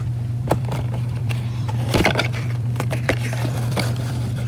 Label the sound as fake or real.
fake